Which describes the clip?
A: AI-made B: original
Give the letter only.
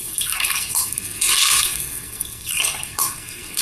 A